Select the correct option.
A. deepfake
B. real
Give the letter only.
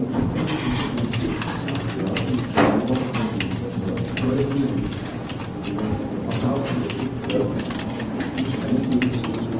B